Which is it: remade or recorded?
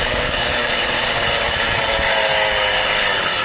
remade